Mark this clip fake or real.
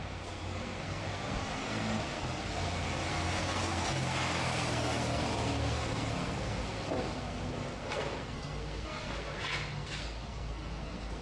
fake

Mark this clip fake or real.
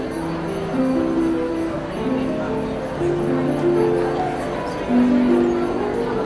real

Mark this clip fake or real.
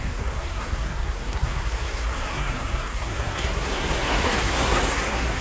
fake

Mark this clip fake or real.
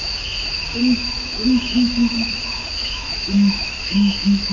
fake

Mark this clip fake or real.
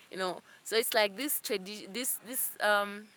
fake